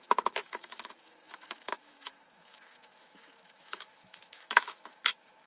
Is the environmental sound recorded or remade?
remade